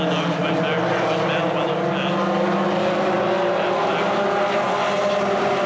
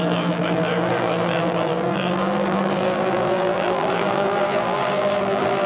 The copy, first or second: second